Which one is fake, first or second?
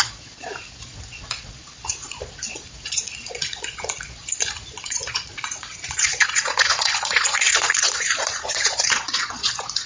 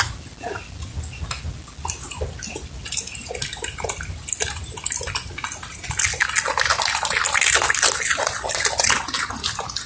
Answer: first